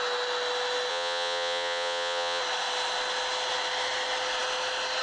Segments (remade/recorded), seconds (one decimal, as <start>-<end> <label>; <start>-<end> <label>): 0.0-0.9 recorded; 0.9-2.4 remade; 2.4-5.0 recorded